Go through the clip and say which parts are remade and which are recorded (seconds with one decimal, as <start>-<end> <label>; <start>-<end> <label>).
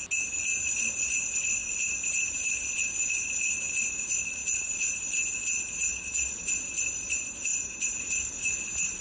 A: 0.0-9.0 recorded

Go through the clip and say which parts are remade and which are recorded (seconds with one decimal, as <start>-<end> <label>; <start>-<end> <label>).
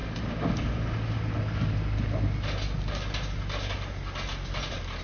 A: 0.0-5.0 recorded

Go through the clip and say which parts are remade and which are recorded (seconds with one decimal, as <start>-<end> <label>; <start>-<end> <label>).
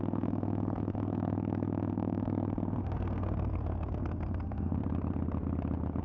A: 0.0-4.8 remade; 4.8-6.0 recorded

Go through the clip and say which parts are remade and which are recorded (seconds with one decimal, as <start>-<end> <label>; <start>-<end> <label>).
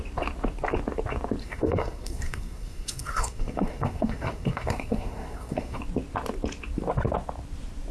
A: 0.0-1.4 recorded; 1.4-5.8 remade; 5.8-7.9 recorded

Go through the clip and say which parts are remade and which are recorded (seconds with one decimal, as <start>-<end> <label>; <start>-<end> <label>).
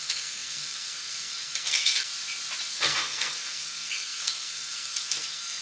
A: 0.0-2.1 remade; 2.1-2.7 recorded; 2.7-5.6 remade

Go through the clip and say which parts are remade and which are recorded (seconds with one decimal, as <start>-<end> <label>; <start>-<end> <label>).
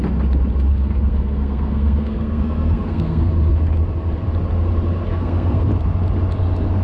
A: 0.0-0.7 recorded; 0.7-3.3 remade; 3.3-5.1 recorded; 5.1-5.7 remade; 5.7-6.8 recorded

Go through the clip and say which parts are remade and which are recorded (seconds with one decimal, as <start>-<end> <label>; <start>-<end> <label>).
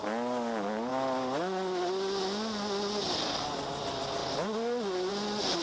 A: 0.0-5.6 recorded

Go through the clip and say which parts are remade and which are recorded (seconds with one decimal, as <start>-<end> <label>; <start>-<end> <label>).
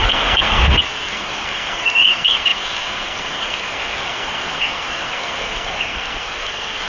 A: 0.0-6.9 remade